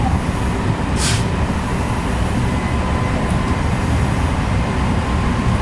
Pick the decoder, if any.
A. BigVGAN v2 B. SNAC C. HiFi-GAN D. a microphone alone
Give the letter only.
A